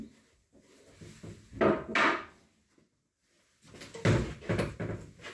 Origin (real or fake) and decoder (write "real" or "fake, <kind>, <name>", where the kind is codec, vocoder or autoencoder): real